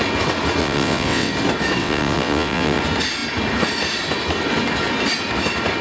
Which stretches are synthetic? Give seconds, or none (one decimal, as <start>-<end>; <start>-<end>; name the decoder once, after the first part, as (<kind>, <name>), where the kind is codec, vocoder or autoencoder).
0.6-1.3 (vocoder, WaveNeXt); 1.8-2.8